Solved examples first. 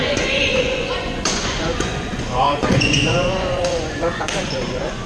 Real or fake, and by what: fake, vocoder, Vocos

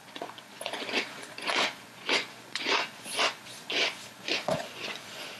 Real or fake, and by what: fake, vocoder, Vocos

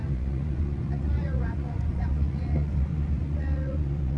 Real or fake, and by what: fake, vocoder, Vocos